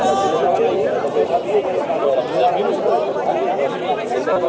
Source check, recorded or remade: recorded